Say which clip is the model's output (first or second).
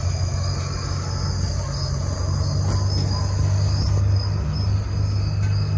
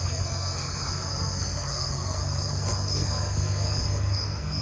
second